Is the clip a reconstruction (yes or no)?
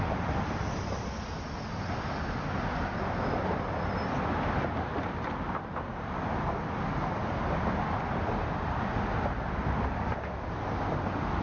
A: no